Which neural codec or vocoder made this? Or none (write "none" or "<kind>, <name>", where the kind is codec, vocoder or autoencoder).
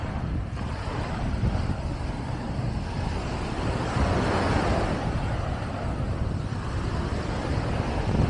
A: none